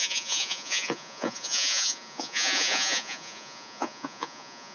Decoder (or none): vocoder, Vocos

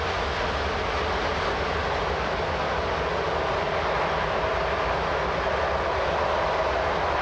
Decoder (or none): none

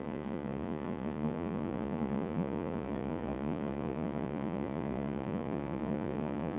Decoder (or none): vocoder, Vocos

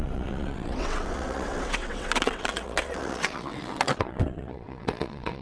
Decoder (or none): vocoder, WaveNeXt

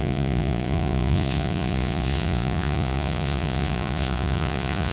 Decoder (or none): vocoder, Vocos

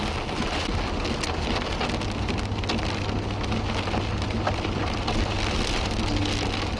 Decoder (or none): none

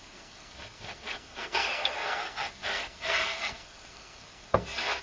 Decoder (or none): codec, SNAC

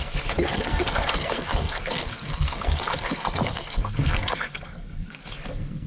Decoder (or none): codec, SNAC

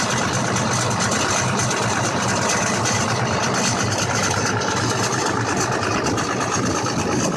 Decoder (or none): none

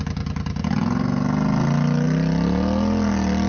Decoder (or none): none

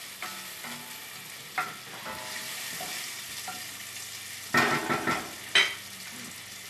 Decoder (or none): none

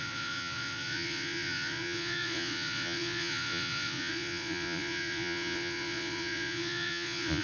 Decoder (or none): vocoder, Vocos